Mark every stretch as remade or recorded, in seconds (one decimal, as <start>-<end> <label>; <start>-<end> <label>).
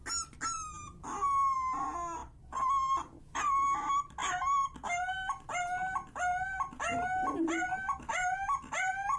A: 0.0-8.1 recorded; 8.1-9.2 remade